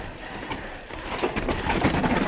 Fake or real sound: fake